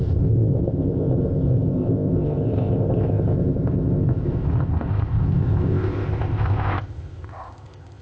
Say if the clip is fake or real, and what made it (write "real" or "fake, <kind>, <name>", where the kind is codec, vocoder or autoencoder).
fake, codec, ZipCodec